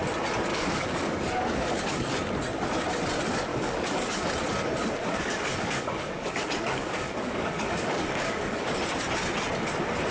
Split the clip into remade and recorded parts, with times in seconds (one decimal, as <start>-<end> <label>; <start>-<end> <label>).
0.0-0.5 recorded; 0.5-2.1 remade; 2.1-3.5 recorded; 3.5-4.3 remade; 4.3-5.0 recorded; 5.0-8.8 remade; 8.8-10.1 recorded